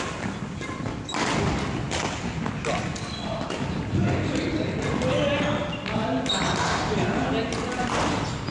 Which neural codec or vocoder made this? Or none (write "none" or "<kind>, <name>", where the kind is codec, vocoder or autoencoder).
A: none